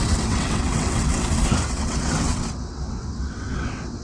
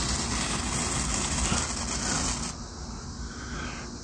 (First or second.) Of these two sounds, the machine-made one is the first